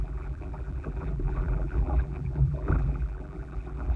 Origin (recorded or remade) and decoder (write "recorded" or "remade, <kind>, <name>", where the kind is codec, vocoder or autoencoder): remade, vocoder, BigVGAN v2